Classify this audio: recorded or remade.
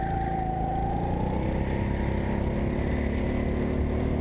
recorded